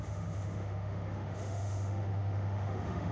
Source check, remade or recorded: remade